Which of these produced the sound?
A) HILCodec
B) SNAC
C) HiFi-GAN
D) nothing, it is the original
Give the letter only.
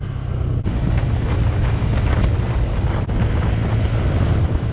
D